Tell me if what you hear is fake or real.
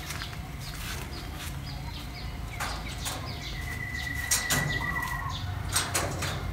real